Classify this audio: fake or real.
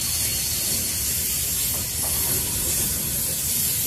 real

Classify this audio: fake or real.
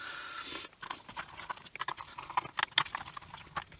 real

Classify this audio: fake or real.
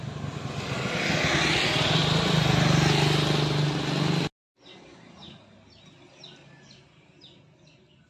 real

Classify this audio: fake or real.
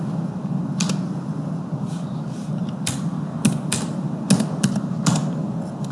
real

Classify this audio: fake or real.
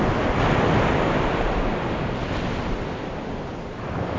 real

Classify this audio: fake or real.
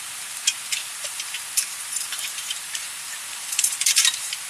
fake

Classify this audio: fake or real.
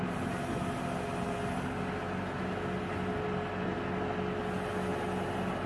real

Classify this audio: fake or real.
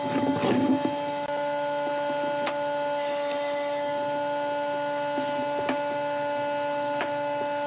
real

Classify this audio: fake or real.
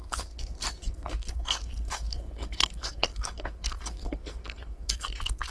fake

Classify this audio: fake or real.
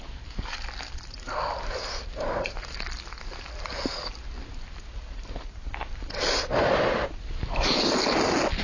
real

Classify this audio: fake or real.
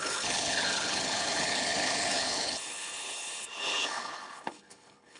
fake